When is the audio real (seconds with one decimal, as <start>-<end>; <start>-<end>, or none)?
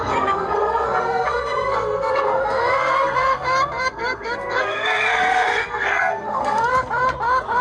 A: 6.7-7.6